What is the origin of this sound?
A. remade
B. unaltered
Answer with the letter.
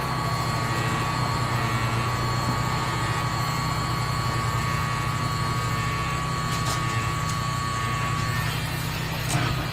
B